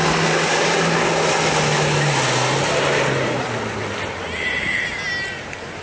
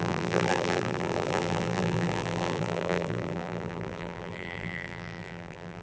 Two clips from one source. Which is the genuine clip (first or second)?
first